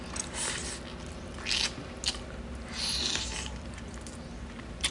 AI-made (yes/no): no